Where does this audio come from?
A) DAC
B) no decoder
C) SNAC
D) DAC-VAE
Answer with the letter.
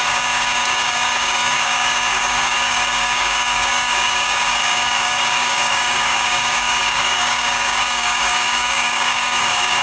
A